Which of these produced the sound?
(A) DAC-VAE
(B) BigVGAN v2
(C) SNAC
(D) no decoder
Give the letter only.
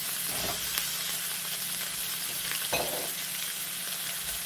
D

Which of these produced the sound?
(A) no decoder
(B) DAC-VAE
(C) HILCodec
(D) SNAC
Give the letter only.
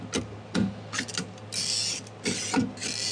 A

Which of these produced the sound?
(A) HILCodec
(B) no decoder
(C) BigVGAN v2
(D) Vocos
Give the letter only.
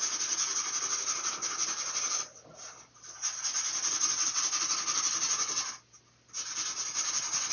B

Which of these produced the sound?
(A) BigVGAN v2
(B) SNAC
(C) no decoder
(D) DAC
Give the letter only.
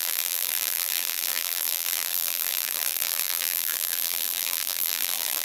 A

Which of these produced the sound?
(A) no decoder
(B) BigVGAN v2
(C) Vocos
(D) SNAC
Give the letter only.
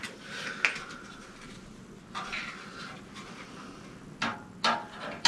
A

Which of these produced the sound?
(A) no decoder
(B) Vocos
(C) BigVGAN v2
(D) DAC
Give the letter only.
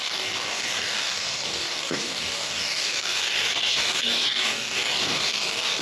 D